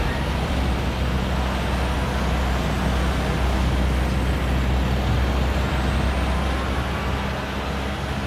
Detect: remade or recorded recorded